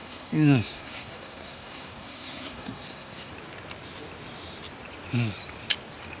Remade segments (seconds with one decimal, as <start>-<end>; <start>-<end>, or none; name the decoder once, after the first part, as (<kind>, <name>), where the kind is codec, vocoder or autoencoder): 0.0-3.3 (codec, SNAC)